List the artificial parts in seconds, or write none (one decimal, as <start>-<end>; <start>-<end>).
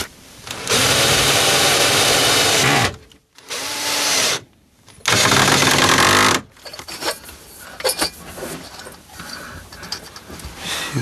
0.0-5.0; 8.4-11.0